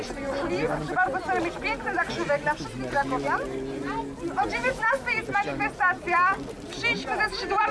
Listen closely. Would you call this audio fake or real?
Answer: real